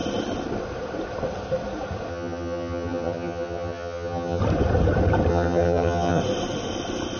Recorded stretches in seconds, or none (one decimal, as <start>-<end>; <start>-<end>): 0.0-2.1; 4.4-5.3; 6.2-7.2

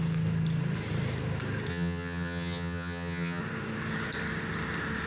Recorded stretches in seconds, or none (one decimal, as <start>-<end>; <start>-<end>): 0.0-1.7; 3.4-5.1

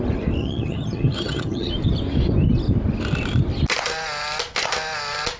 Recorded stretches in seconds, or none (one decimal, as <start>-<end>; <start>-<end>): 0.0-0.4; 1.7-5.4

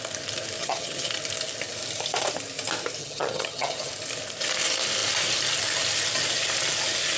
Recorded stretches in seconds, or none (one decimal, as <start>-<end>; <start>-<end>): 0.0-0.6; 1.1-3.0; 3.9-7.2

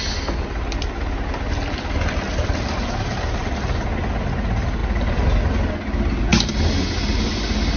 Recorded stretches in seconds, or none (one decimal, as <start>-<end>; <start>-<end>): 0.0-7.8

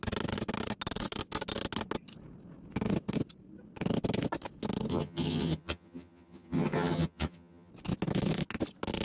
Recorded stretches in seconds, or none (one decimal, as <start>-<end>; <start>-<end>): 0.0-4.9; 7.7-9.0

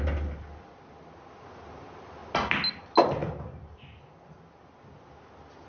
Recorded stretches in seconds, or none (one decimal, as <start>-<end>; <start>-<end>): 0.0-5.7

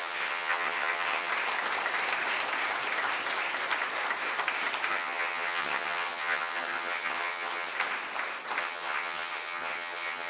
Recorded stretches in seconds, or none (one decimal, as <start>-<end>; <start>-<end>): 1.3-4.9; 7.7-8.6